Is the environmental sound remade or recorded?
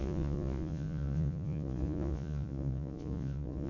remade